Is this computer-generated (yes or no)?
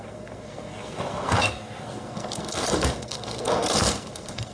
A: yes